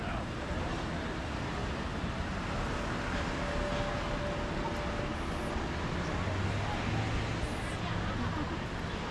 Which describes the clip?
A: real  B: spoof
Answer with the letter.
A